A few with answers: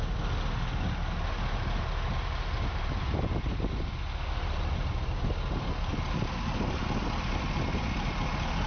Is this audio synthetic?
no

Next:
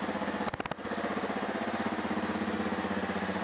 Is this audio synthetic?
no